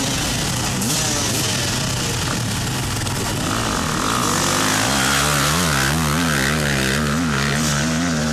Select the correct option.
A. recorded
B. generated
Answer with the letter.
A